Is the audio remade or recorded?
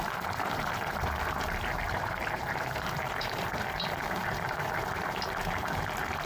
remade